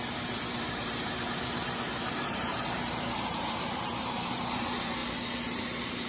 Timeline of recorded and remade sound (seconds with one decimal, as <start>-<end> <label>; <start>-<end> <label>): 0.0-5.0 remade; 5.0-6.1 recorded